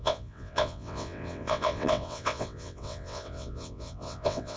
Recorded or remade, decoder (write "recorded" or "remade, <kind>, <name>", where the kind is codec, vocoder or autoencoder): remade, vocoder, WaveNeXt